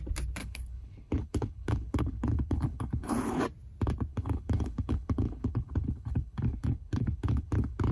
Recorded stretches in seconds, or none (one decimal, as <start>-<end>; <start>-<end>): 0.0-0.4; 3.4-4.1